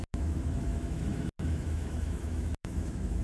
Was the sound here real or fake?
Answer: fake